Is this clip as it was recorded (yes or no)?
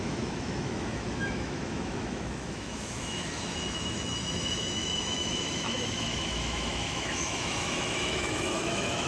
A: no